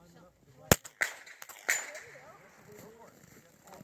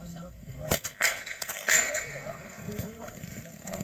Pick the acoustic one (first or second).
first